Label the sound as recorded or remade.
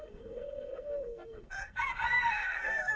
remade